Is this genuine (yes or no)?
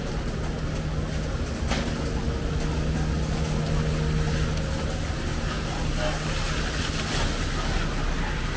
yes